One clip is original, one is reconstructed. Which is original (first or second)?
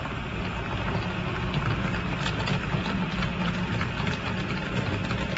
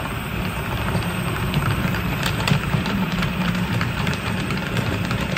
first